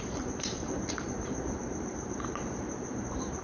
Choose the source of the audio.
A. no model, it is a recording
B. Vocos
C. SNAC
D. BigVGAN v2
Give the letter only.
D